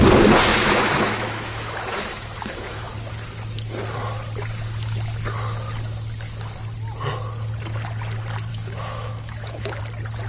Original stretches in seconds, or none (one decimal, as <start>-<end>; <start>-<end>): 0.0-0.5; 2.9-8.5; 9.8-10.3

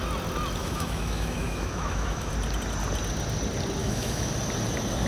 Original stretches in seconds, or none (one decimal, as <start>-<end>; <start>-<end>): 0.0-0.6; 2.3-3.8; 4.3-5.1

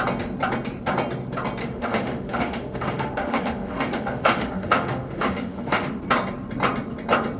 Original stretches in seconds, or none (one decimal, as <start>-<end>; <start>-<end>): 0.0-1.6; 6.0-7.4

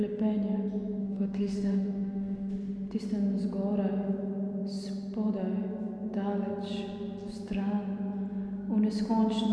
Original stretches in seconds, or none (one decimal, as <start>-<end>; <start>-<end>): 0.0-1.0; 2.5-9.5

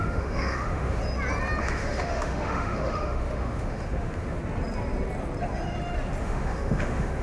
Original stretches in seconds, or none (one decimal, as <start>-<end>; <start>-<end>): 1.0-1.6; 4.4-6.2

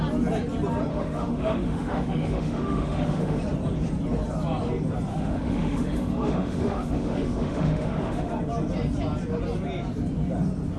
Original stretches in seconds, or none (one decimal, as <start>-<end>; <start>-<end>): 0.0-0.9; 3.4-5.1; 8.3-10.8

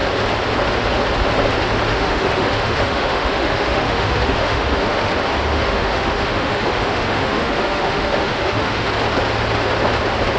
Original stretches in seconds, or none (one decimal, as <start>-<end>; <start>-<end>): 0.0-1.9; 5.1-5.5; 8.9-10.4

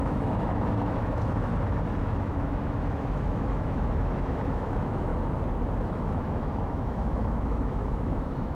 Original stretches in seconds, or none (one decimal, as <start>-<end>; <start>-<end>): 1.5-2.0; 5.1-5.8